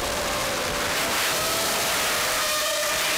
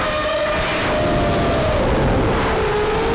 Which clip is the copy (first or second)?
first